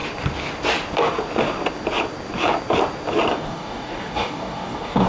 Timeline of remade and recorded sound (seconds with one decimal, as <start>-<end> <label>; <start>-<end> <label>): 0.0-3.3 recorded; 3.3-5.1 remade